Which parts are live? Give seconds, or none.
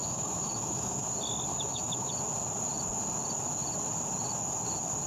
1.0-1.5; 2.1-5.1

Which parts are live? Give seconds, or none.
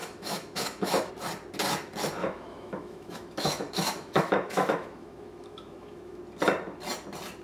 1.1-2.2; 6.2-7.4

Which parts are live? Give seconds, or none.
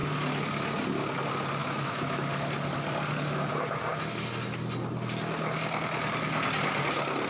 0.0-1.6; 2.3-7.3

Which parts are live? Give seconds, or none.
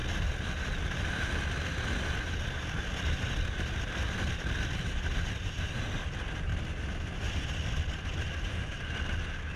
0.0-9.6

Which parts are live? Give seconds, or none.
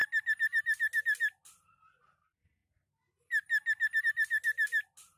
0.0-5.2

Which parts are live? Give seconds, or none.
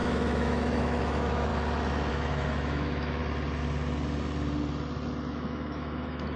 1.5-2.1; 3.2-5.3